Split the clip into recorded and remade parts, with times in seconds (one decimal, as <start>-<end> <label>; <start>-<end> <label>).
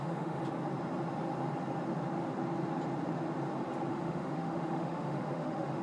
0.0-0.4 remade; 0.4-3.9 recorded; 3.9-5.8 remade